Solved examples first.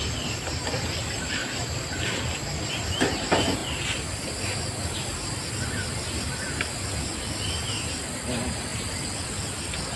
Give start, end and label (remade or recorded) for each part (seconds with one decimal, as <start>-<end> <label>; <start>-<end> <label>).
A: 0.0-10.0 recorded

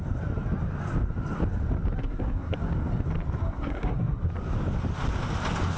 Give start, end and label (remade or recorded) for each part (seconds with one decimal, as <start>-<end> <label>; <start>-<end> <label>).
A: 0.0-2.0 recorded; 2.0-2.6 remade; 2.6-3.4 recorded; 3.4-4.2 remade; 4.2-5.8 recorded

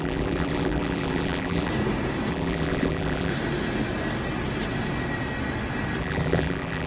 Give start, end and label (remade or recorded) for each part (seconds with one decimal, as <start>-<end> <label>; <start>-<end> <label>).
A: 0.0-1.7 remade; 1.7-2.3 recorded; 2.3-3.3 remade; 3.3-6.0 recorded; 6.0-6.9 remade